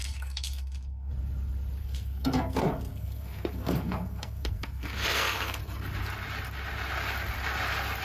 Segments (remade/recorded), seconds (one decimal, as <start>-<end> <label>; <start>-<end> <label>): 0.0-1.1 remade; 1.1-1.8 recorded; 1.8-5.6 remade; 5.6-8.0 recorded